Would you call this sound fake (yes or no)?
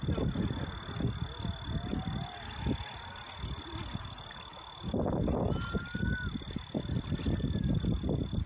no